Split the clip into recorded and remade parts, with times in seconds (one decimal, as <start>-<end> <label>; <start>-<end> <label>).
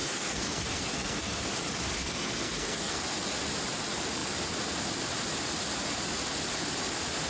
0.0-1.4 remade; 1.4-2.0 recorded; 2.0-3.0 remade; 3.0-7.3 recorded